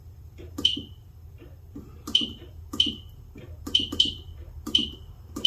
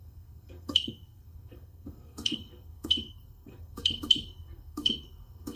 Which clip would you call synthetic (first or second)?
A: second